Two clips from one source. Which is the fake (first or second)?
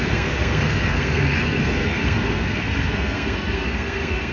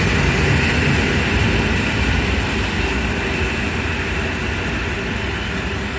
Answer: first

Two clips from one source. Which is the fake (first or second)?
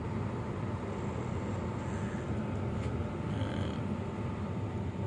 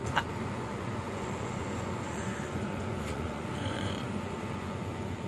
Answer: second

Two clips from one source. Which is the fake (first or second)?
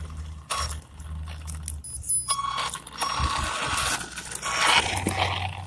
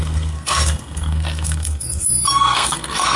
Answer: second